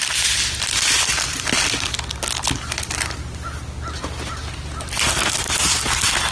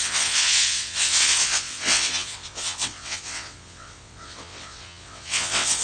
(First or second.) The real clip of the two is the first